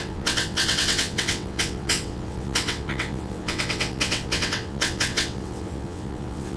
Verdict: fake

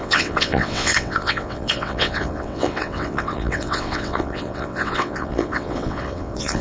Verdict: fake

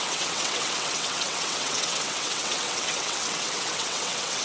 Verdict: fake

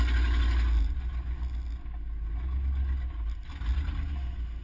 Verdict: real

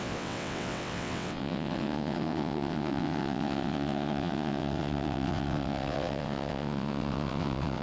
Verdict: fake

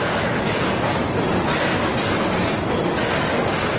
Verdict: real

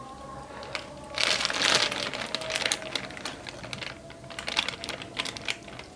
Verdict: real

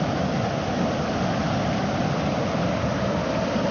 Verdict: real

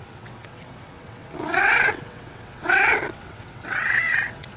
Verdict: fake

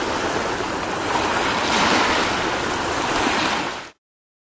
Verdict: real